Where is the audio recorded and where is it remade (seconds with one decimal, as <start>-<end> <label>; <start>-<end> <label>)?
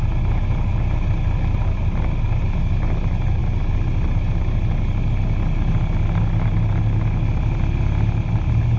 0.0-8.8 recorded